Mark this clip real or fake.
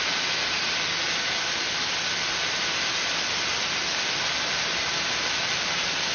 real